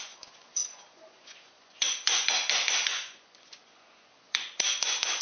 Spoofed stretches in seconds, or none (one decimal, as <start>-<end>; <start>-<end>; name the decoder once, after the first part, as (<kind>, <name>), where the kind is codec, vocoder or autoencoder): 0.0-5.2 (vocoder, Vocos)